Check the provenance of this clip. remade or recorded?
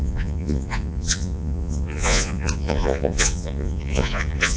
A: remade